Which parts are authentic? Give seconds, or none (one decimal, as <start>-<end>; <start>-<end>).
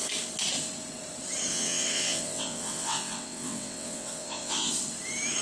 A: 0.0-1.5; 4.7-5.4